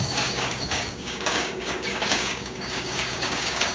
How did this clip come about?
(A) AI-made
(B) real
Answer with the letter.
A